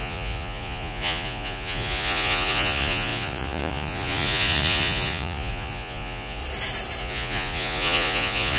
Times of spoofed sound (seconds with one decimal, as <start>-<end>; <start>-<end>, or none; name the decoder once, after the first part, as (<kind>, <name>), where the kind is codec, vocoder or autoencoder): 0.0-6.4 (vocoder, Vocos); 7.0-8.6